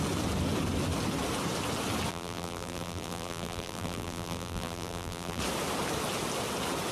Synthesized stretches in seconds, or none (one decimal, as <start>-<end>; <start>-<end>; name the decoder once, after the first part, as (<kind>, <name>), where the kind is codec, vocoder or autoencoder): 2.1-5.4 (vocoder, BigVGAN v2)